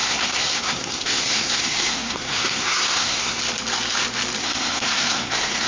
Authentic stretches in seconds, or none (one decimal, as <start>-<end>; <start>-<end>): 3.4-4.4